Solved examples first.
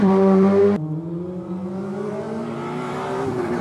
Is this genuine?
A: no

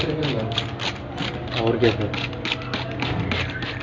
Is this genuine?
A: yes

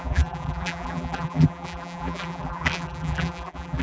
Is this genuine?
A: no